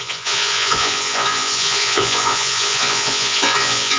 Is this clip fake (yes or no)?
yes